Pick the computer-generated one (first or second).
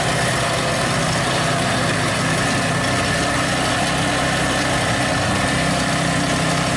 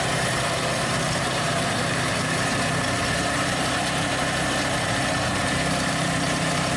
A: second